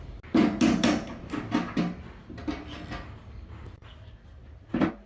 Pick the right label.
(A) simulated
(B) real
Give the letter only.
B